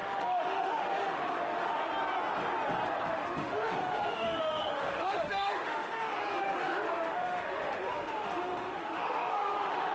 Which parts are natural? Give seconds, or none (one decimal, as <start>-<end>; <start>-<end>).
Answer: 1.8-3.1